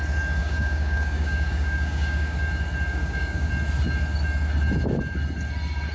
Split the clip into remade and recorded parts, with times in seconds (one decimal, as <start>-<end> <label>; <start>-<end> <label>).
0.0-0.4 recorded; 0.4-2.5 remade; 2.5-2.9 recorded; 2.9-3.5 remade; 3.5-5.9 recorded